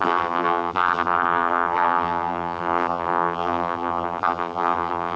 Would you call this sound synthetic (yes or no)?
yes